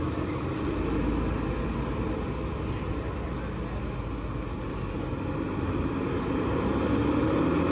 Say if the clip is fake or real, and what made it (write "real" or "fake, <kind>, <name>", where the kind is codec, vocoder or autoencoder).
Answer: real